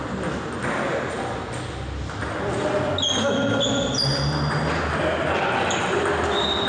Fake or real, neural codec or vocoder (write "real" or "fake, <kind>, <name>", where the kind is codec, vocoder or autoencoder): real